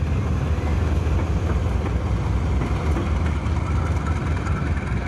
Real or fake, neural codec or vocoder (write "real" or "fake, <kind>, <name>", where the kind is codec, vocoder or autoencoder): real